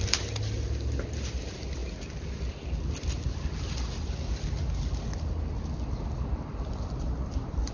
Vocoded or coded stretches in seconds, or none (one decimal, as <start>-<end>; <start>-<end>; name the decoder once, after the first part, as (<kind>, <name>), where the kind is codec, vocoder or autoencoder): none